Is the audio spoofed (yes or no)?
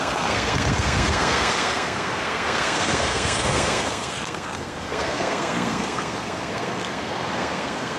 yes